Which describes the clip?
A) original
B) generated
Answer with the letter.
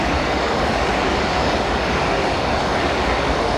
B